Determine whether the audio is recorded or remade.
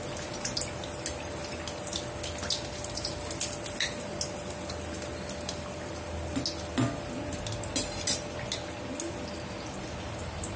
recorded